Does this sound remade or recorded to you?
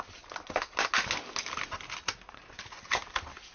recorded